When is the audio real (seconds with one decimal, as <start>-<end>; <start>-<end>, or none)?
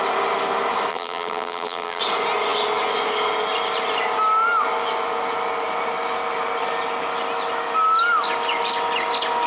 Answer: 0.0-0.9; 2.0-9.5